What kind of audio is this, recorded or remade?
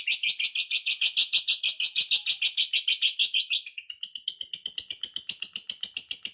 recorded